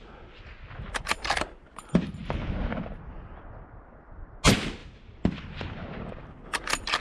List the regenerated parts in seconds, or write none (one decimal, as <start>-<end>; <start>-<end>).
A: none